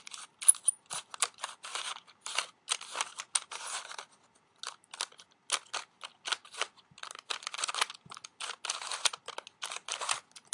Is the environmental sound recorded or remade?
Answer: recorded